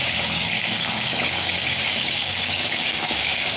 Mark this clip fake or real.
fake